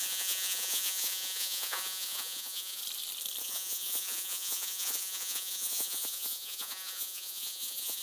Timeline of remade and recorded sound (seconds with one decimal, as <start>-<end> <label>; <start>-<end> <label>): 0.0-2.8 remade; 2.8-3.4 recorded; 3.4-8.0 remade